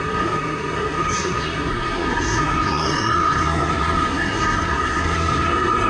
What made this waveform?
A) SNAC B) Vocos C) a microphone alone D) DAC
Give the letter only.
A